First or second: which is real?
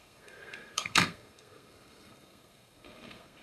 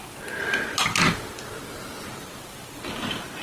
second